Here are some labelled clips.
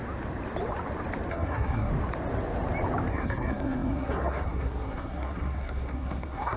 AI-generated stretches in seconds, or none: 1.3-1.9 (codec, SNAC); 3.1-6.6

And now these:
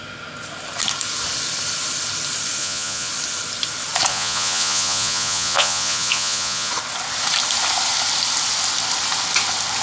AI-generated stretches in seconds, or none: 2.6-3.1 (vocoder, Vocos); 4.1-6.7

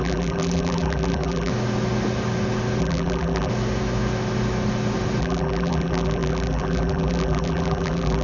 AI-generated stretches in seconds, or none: 0.0-1.5 (vocoder, BigVGAN v2); 2.8-3.5; 5.2-8.2

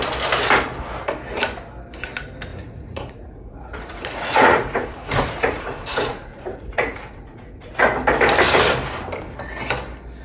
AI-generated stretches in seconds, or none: 2.5-7.7 (vocoder, Vocos)

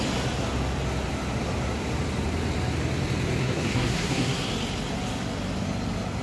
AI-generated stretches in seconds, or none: 3.4-4.5 (codec, SNAC)

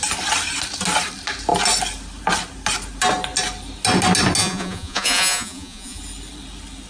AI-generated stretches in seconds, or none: 4.4-6.0 (vocoder, Vocos)

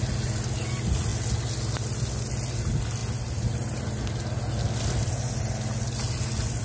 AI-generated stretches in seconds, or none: none